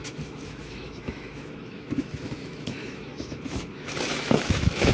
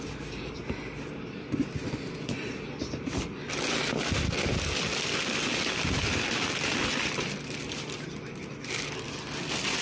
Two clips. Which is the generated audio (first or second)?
first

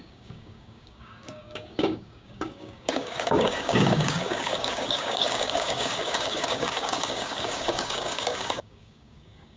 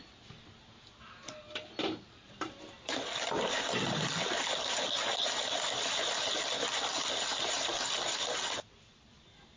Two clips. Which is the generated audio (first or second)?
first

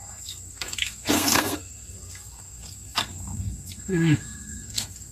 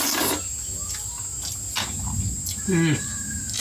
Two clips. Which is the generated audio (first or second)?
first